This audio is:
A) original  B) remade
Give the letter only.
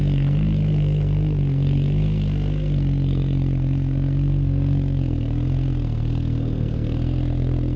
B